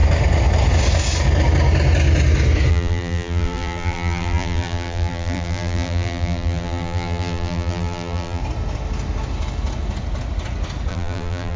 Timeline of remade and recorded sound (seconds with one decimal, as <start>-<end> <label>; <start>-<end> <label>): 0.0-2.7 recorded; 2.7-8.4 remade; 8.4-10.9 recorded; 10.9-11.6 remade